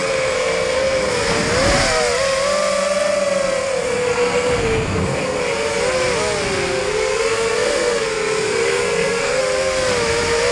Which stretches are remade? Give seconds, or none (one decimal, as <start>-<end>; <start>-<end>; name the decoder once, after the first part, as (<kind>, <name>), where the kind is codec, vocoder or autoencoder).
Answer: 0.0-1.3 (codec, SNAC); 3.6-5.4; 6.8-9.4